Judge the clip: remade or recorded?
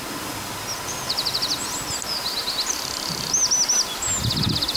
recorded